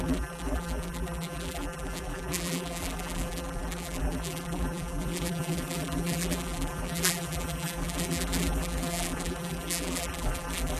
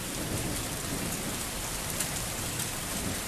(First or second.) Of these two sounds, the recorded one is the second